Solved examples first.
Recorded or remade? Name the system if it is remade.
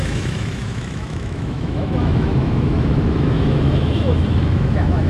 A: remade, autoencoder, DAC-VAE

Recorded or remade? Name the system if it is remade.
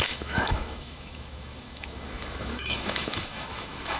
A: remade, autoencoder, DAC-VAE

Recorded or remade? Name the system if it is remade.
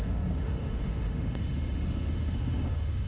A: remade, autoencoder, DAC-VAE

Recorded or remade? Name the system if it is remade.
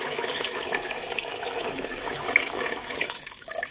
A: remade, autoencoder, DAC-VAE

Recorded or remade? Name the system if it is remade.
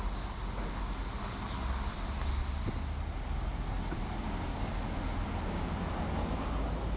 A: recorded